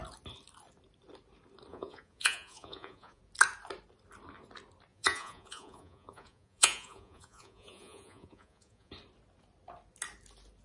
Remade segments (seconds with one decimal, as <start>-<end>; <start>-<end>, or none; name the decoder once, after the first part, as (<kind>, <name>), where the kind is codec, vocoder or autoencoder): 1.7-3.2 (vocoder, Vocos); 4.9-8.9